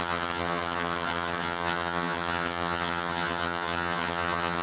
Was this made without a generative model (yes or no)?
no